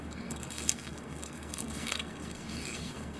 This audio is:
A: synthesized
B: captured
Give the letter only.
A